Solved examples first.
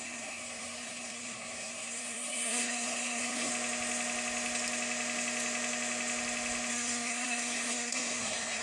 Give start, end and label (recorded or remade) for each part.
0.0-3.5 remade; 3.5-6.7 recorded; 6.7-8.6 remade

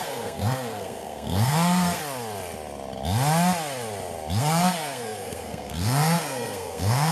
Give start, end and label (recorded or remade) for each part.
0.0-2.0 remade; 2.0-4.4 recorded; 4.4-7.1 remade

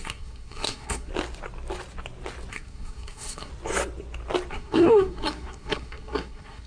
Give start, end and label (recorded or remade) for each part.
0.0-1.1 remade; 1.1-2.5 recorded; 2.5-3.5 remade; 3.5-4.5 recorded; 4.5-6.7 remade

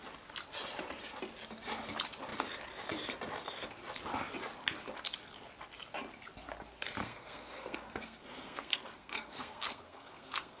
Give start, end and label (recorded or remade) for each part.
0.0-7.0 recorded; 7.0-10.6 remade

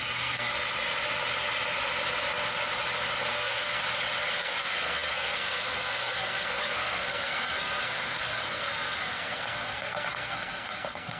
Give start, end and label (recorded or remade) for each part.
0.0-0.5 remade; 0.5-3.3 recorded; 3.3-3.8 remade; 3.8-4.3 recorded; 4.3-11.2 remade

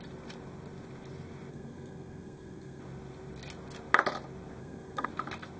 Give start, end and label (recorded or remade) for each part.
0.0-1.5 recorded; 1.5-2.8 remade; 2.8-4.6 recorded; 4.6-5.1 remade; 5.1-5.6 recorded